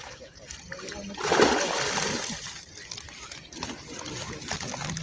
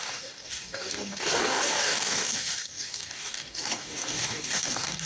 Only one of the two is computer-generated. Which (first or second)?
second